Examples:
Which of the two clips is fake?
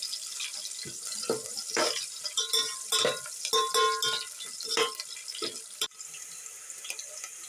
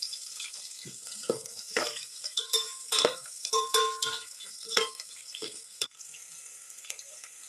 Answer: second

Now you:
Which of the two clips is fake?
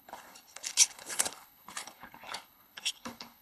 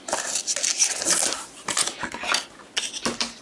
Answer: first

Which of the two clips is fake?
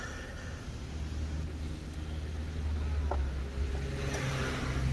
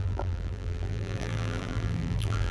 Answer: second